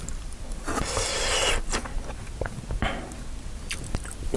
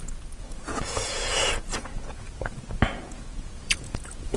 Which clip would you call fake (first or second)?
second